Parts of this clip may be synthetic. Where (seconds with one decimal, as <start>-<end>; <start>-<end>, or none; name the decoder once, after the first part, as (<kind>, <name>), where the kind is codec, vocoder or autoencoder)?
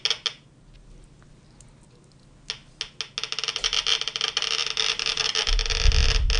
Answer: none